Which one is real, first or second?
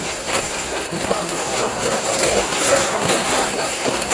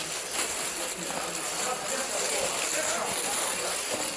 second